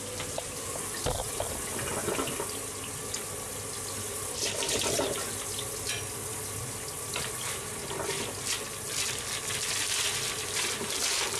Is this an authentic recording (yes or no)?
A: yes